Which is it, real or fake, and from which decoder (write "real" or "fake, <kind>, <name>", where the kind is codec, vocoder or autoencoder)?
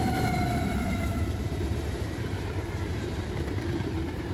fake, vocoder, BigVGAN v2